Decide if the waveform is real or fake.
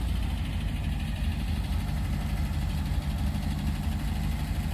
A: real